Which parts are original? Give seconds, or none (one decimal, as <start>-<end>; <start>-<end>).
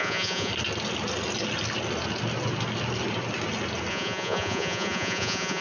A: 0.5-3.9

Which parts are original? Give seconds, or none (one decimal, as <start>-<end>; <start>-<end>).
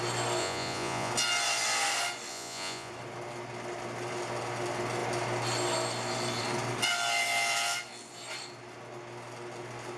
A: 0.0-0.4; 1.1-2.3; 2.9-10.0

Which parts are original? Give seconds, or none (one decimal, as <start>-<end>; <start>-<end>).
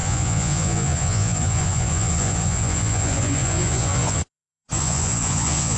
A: none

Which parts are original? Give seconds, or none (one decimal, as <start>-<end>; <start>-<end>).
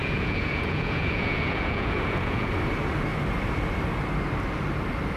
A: 2.5-5.2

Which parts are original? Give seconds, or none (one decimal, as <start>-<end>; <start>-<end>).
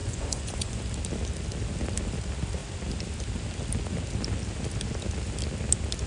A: 0.8-6.1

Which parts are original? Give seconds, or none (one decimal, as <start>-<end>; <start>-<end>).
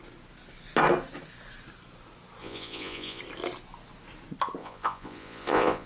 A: 0.0-2.4; 3.2-4.6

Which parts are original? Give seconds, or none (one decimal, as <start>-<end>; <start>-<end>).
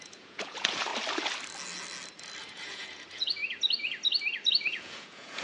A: 0.9-2.4; 3.4-4.5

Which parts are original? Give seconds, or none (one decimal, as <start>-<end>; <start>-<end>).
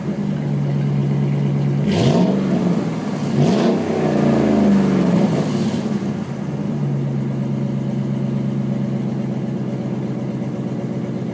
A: 0.0-11.3